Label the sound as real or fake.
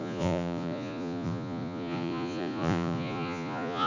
fake